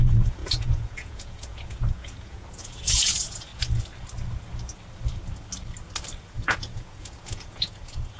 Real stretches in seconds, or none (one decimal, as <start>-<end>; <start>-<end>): 3.5-6.3